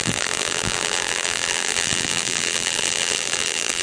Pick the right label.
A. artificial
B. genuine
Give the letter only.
A